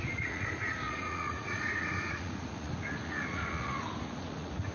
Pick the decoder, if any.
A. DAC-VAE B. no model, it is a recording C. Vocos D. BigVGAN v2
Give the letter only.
C